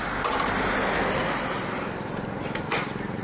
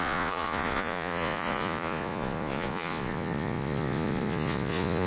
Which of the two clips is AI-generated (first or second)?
second